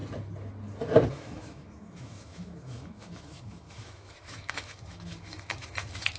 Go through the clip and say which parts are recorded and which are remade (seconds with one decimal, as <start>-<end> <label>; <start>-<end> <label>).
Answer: 0.0-1.1 recorded; 1.1-6.2 remade